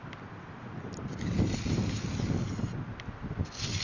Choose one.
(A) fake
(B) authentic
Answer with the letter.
B